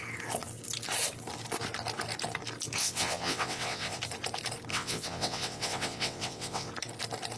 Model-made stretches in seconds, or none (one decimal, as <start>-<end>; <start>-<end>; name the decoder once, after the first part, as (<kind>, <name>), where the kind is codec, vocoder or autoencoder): 2.8-4.0 (vocoder, WaveNeXt); 4.7-6.7